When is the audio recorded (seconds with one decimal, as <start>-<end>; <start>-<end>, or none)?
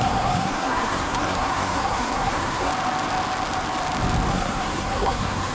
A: 2.7-4.3